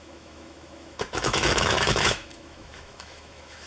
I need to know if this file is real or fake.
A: fake